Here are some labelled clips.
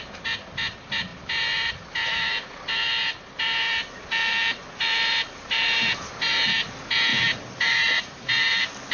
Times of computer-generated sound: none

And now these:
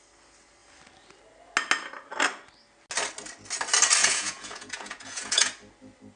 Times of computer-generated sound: 4.0-5.5 (vocoder, Vocos)

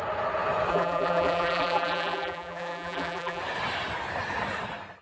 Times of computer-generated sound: 0.7-3.4 (vocoder, BigVGAN v2)

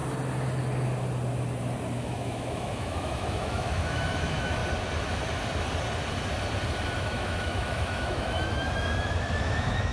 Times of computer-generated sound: 2.0-4.6 (autoencoder, DAC-VAE); 7.0-9.9

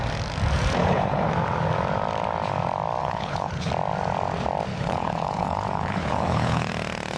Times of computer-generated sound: 0.8-1.3 (codec, HILCodec); 3.0-3.7; 4.7-6.7

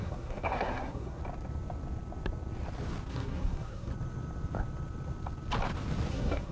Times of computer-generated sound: 0.0-1.2 (codec, SNAC); 3.1-3.9; 6.1-6.5